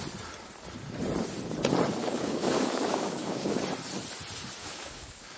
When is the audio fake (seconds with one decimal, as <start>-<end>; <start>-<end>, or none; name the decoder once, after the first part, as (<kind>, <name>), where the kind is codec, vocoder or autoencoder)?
2.0-3.6 (codec, DAC); 4.6-5.4

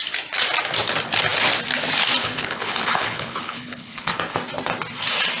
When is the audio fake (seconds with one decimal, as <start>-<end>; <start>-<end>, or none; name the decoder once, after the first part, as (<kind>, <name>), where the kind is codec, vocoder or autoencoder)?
2.2-4.2 (codec, HILCodec)